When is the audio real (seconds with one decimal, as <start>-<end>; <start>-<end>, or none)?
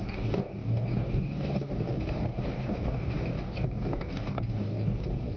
none